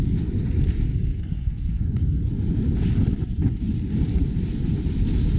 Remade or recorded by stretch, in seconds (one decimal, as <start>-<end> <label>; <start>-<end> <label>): 0.0-0.9 recorded; 0.9-2.2 remade; 2.2-5.4 recorded